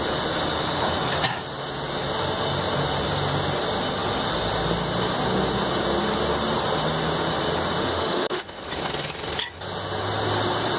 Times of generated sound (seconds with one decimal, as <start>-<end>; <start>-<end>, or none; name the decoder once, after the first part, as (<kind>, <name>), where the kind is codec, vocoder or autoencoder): 7.8-8.6 (autoencoder, DAC-VAE)